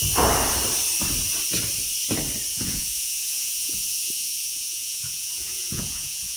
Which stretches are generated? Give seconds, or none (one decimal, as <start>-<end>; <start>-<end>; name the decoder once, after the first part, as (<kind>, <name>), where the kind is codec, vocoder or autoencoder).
2.5-6.4 (vocoder, Vocos)